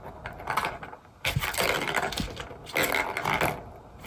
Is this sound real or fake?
real